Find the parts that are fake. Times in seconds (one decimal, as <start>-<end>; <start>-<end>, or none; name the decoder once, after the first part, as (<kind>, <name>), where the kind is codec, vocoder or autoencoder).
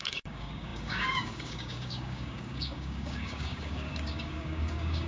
0.0-5.1 (codec, DAC)